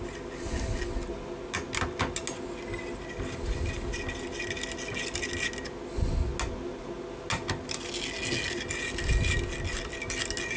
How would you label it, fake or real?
real